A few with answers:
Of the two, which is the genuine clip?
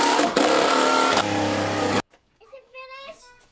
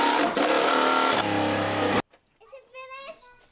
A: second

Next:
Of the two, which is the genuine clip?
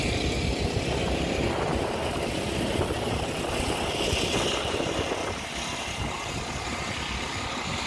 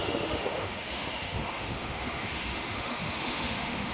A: first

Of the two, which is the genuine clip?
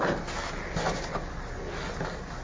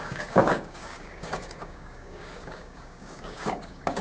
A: first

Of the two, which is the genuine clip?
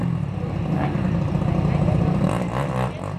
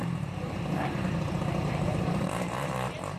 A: first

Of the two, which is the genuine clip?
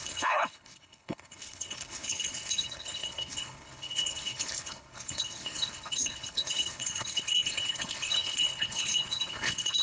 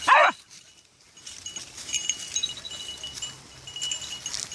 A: second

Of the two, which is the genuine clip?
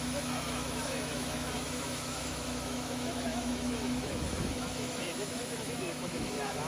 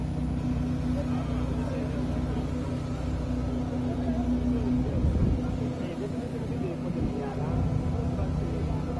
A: second